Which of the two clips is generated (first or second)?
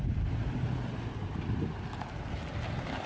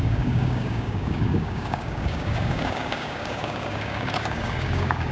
second